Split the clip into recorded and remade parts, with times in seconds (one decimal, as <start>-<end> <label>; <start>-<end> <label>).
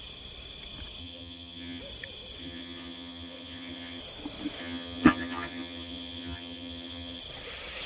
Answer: 0.0-1.0 recorded; 1.0-1.8 remade; 1.8-2.4 recorded; 2.4-4.0 remade; 4.0-4.6 recorded; 4.6-7.2 remade; 7.2-7.9 recorded